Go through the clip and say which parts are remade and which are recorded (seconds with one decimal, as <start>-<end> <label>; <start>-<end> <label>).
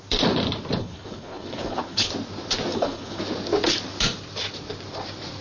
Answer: 0.0-0.8 recorded; 0.8-2.1 remade; 2.1-2.7 recorded; 2.7-3.2 remade; 3.2-5.4 recorded